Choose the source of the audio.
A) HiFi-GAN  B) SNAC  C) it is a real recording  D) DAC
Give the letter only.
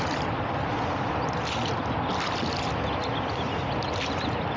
C